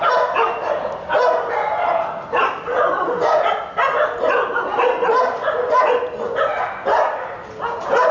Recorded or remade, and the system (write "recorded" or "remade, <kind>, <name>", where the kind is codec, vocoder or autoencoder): recorded